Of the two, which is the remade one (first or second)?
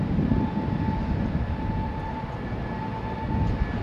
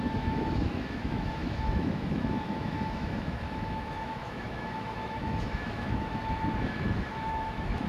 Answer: second